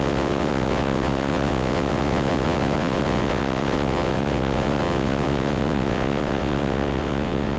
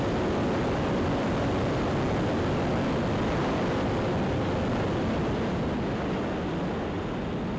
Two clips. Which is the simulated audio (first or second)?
first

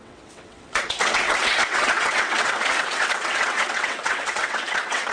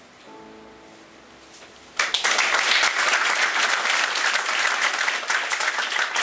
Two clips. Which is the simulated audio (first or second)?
first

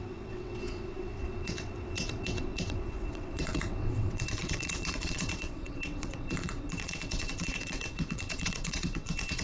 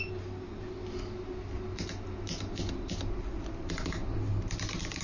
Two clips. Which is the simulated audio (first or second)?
first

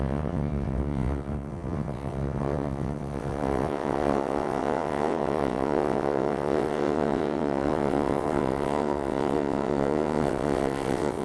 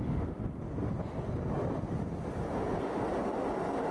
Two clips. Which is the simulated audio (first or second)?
first